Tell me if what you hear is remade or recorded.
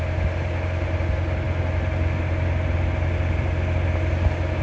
recorded